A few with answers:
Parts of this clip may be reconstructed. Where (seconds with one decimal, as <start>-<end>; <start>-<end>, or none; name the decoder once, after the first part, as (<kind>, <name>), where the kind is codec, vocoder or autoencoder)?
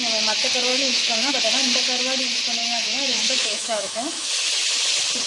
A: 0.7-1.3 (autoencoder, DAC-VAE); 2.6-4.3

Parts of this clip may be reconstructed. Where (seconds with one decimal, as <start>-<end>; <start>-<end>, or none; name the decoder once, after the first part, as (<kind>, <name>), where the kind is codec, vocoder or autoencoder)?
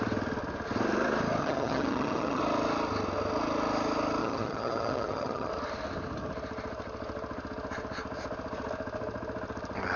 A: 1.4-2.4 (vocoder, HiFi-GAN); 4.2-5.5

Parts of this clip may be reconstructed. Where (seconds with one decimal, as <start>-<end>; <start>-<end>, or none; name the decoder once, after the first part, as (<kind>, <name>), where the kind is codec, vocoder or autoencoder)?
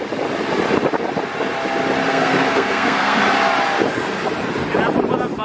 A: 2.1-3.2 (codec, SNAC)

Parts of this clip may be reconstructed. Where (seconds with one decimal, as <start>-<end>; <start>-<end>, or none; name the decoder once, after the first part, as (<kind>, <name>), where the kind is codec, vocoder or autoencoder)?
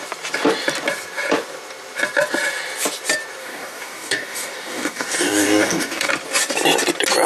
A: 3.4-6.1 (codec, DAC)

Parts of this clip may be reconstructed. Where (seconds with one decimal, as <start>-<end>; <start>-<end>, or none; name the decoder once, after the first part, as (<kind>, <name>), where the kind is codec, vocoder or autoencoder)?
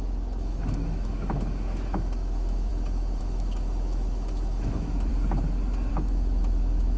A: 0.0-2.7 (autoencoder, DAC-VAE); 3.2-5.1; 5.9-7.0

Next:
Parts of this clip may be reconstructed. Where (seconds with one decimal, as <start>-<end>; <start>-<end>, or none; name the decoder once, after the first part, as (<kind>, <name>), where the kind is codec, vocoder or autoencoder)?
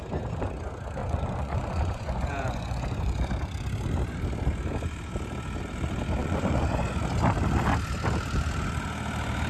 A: 1.0-3.3 (vocoder, Vocos); 6.2-7.0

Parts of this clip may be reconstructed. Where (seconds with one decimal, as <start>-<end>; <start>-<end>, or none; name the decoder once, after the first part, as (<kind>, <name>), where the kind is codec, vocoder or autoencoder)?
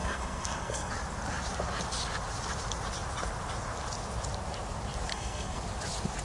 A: 0.0-0.9 (codec, SNAC); 5.1-5.6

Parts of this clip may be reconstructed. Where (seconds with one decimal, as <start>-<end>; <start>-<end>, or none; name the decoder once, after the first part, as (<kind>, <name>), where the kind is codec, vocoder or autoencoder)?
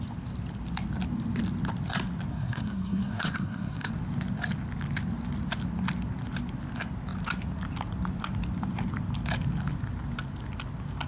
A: 2.3-3.9 (codec, SNAC)